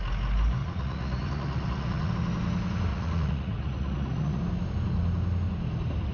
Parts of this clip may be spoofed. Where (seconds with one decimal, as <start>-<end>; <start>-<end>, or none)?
0.6-2.1; 2.9-4.4